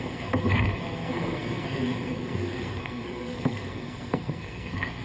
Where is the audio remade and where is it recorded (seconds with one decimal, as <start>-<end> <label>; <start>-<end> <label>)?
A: 0.0-5.0 remade

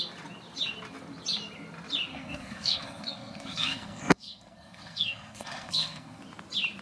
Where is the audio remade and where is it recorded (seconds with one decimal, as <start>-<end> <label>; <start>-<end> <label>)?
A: 0.0-2.1 recorded; 2.1-6.2 remade; 6.2-6.8 recorded

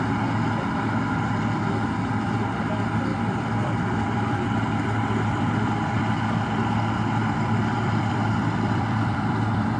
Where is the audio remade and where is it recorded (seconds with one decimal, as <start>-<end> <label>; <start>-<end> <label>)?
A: 0.0-3.1 recorded; 3.1-6.1 remade; 6.1-7.2 recorded; 7.2-9.8 remade

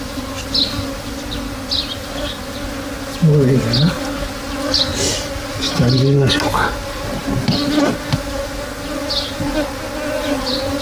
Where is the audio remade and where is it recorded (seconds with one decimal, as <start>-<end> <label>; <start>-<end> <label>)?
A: 0.0-10.8 recorded